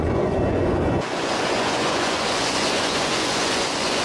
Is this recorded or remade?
remade